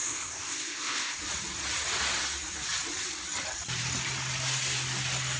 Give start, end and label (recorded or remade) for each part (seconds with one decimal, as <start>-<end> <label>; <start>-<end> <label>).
0.0-1.2 remade; 1.2-5.4 recorded